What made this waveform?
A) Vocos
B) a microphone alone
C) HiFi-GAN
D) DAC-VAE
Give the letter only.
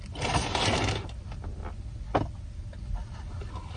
B